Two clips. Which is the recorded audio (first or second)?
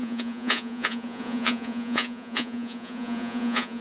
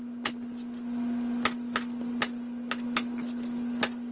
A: second